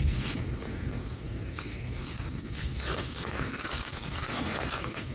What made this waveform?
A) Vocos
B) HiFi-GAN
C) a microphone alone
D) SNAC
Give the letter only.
D